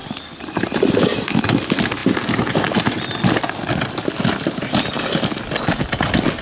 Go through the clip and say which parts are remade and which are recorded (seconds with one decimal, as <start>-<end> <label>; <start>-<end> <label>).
0.0-6.4 recorded